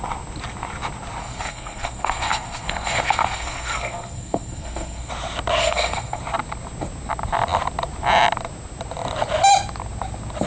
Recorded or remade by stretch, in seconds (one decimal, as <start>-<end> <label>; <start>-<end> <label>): 0.0-1.2 recorded; 1.2-5.1 remade; 5.1-5.6 recorded; 5.6-6.2 remade; 6.2-10.5 recorded